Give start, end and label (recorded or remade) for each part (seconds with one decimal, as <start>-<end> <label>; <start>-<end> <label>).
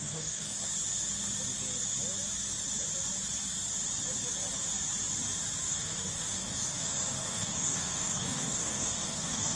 0.0-0.6 remade; 0.6-5.7 recorded; 5.7-9.6 remade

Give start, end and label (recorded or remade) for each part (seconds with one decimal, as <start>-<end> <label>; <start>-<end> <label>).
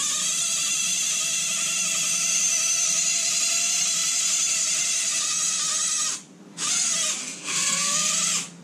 0.0-7.2 recorded; 7.2-8.1 remade; 8.1-8.6 recorded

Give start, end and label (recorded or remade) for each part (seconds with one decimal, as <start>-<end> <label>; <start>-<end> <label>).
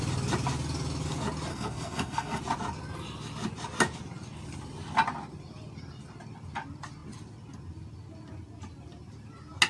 0.0-1.5 recorded; 1.5-2.4 remade; 2.4-9.7 recorded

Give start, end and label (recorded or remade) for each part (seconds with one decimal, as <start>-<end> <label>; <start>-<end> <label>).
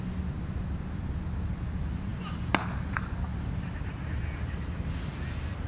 0.0-5.7 recorded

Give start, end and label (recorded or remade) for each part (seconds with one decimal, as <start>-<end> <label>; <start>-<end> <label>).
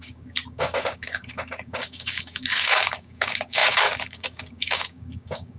0.0-5.6 remade